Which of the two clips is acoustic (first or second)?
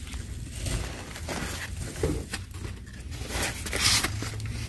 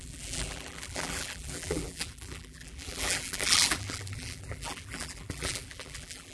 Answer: first